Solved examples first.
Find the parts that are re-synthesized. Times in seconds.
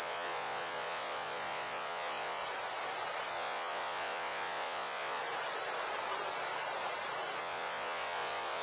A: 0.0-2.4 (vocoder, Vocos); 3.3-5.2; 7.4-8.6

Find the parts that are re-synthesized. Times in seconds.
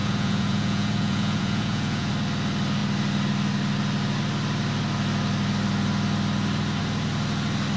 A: 0.0-2.1 (vocoder, Vocos)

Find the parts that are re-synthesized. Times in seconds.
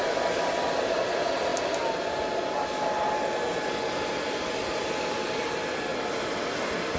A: none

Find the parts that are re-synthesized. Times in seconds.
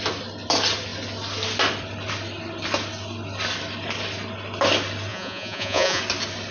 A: 5.1-6.0 (vocoder, Vocos)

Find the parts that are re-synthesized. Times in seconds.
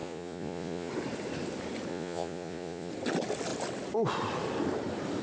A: 0.0-0.9 (vocoder, Vocos); 1.9-2.9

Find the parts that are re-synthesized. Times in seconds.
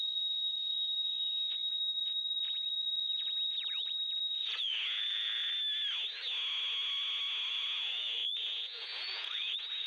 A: 0.0-5.4 (vocoder, Vocos); 7.5-9.9